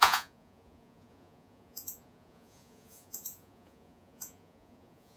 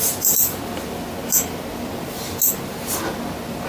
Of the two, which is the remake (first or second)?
first